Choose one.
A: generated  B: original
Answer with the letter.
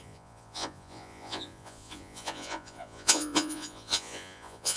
A